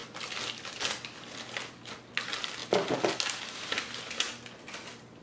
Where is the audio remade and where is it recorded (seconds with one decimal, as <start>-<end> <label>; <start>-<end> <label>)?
0.0-5.2 recorded